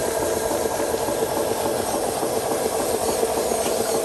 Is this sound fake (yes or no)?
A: no